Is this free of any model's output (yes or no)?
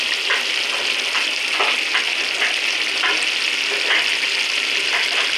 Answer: yes